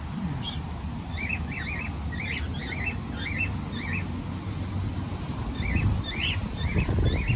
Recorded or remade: recorded